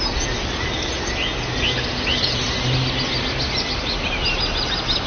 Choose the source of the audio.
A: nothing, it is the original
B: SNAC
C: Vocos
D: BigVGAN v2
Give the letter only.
A